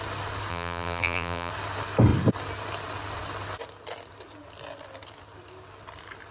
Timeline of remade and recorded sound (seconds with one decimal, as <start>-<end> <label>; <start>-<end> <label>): 0.0-0.5 recorded; 0.5-1.5 remade; 1.5-6.3 recorded